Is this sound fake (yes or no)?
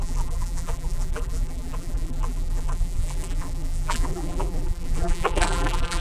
yes